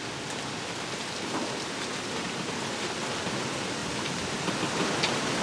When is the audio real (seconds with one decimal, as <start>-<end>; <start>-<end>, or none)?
0.0-5.4